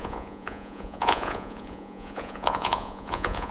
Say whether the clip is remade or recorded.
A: remade